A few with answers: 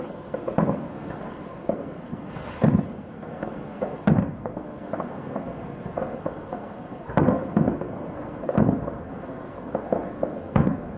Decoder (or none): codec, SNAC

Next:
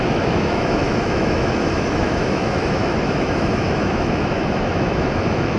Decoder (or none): autoencoder, DAC-VAE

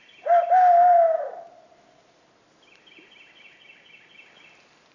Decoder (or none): none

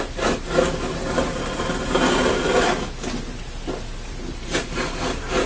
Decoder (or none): none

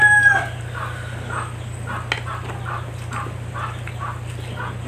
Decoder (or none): none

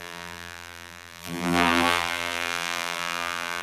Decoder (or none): vocoder, BigVGAN v2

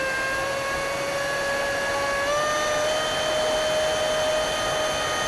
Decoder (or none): none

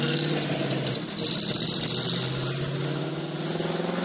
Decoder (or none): none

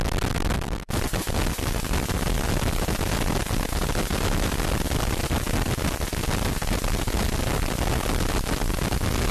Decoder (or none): none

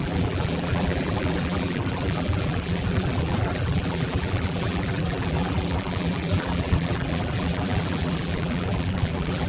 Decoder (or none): vocoder, BigVGAN v2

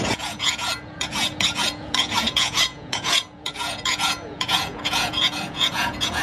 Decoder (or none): vocoder, Vocos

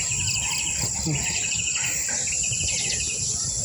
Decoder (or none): none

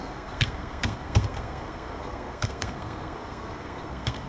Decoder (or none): codec, SNAC